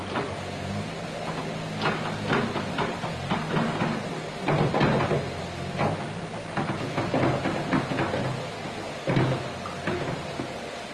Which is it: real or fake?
real